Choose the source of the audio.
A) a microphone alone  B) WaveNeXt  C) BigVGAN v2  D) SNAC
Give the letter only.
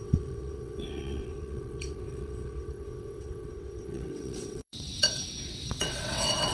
B